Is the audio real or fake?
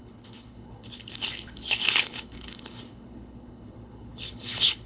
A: fake